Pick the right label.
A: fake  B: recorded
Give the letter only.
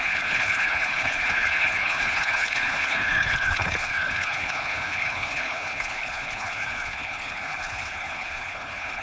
A